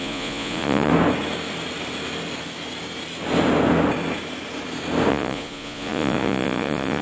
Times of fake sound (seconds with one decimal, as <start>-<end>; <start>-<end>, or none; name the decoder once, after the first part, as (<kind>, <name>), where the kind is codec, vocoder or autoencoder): 0.0-0.9 (vocoder, Vocos); 5.1-7.0